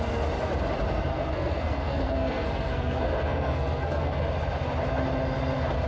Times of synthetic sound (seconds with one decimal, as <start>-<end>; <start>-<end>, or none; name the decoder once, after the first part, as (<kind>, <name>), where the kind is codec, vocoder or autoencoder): 1.1-4.3 (codec, SNAC)